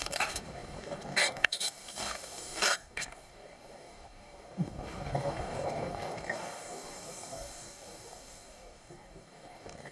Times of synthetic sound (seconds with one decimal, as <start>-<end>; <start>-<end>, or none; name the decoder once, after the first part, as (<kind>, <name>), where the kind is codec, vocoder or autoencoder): 0.0-9.9 (codec, DAC)